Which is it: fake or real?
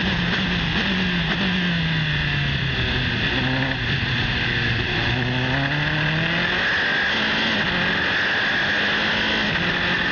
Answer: real